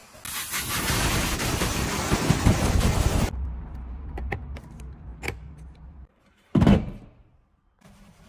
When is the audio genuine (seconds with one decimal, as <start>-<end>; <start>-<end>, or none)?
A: 0.0-3.9